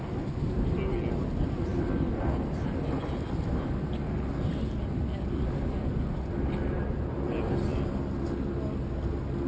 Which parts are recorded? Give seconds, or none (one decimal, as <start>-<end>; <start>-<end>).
0.0-9.5